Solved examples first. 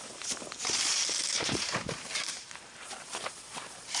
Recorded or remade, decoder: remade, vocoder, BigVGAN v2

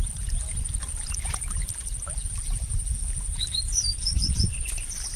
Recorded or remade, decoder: remade, vocoder, BigVGAN v2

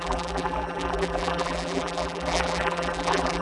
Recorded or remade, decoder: remade, vocoder, BigVGAN v2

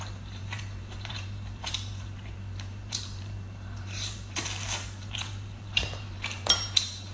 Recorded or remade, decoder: remade, vocoder, BigVGAN v2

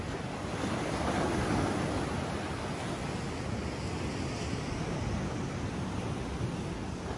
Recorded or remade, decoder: recorded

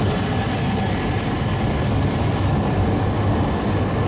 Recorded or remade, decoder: recorded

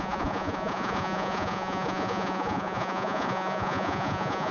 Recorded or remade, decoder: remade, vocoder, Vocos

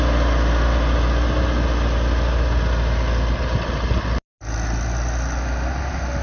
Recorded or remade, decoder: recorded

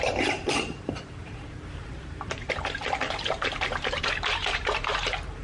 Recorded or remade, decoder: remade, vocoder, BigVGAN v2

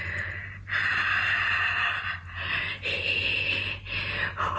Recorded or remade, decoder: recorded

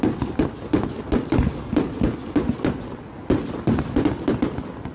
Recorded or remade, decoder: recorded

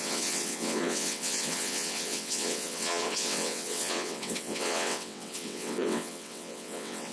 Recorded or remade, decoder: remade, vocoder, WaveNeXt